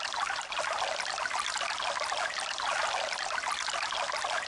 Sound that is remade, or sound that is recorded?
recorded